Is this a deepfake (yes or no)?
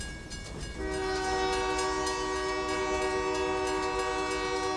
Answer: no